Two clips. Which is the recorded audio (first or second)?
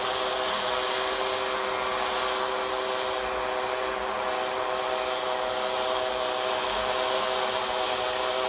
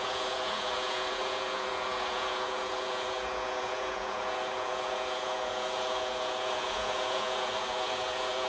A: first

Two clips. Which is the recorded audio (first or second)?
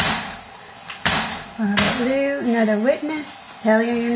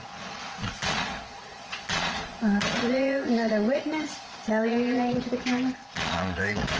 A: first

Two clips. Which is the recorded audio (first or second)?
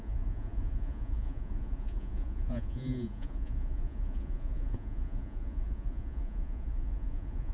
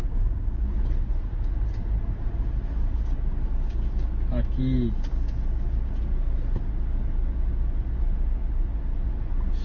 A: second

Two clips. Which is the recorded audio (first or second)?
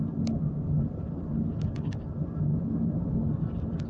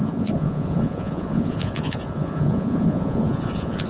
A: first